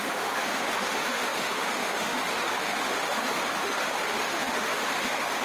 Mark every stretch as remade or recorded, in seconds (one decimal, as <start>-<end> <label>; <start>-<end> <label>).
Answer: 0.0-5.4 remade